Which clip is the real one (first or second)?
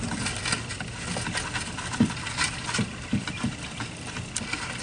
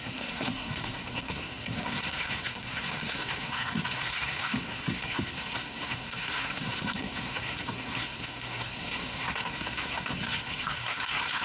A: first